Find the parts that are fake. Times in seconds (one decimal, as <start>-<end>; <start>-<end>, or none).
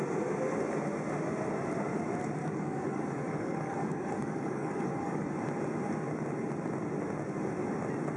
2.4-5.3